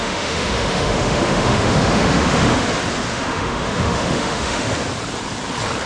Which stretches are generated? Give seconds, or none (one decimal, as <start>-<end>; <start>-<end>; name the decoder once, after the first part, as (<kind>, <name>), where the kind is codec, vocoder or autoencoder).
0.0-2.6 (autoencoder, DAC-VAE); 3.1-4.7